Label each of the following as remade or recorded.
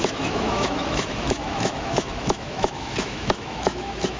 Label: remade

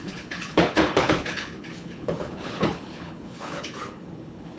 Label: remade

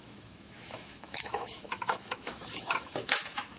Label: remade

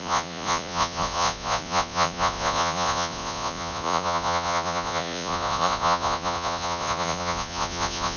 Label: remade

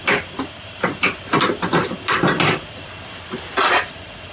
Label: recorded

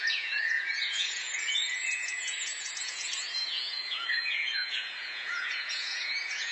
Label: remade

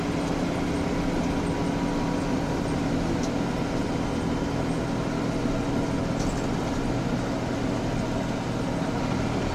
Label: recorded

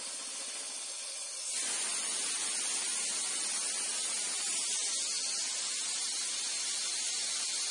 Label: recorded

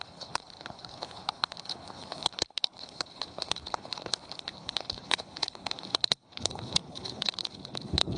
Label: remade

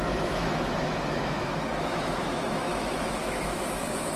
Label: remade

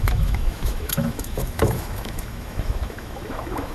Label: remade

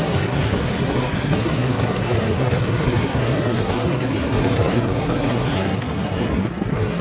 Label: remade